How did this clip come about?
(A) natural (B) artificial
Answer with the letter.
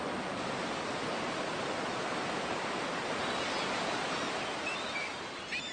A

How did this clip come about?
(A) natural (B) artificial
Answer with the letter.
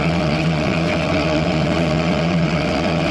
B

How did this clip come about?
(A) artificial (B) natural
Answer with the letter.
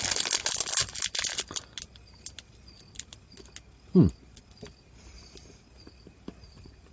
B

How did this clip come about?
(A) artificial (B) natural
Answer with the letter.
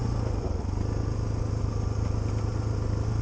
B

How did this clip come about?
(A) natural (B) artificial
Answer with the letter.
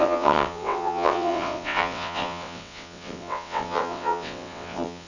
B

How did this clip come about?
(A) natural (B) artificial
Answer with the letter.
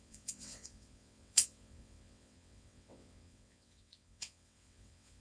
B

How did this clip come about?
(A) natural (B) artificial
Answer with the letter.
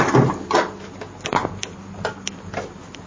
A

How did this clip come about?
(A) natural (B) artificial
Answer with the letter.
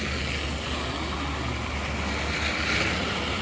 A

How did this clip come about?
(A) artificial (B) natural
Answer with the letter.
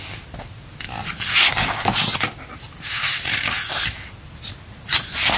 B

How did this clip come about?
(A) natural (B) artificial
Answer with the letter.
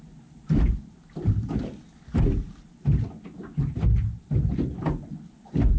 A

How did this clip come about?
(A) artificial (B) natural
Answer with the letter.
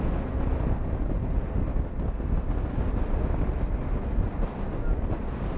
B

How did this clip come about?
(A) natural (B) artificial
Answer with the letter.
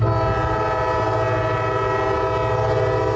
A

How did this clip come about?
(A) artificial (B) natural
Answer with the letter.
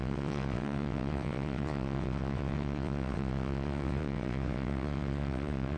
A